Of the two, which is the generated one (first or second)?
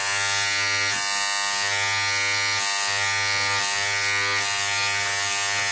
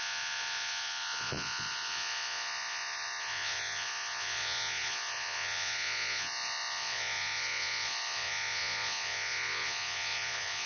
second